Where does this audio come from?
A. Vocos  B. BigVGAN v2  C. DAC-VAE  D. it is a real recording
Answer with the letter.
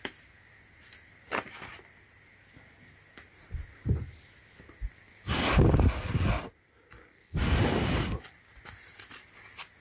D